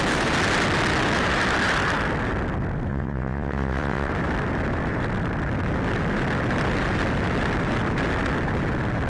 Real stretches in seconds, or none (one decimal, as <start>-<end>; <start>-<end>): 0.0-2.9; 4.1-9.1